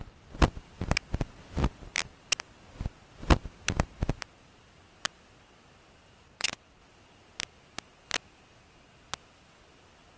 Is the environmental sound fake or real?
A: real